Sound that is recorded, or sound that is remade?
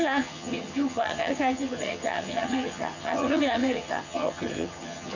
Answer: remade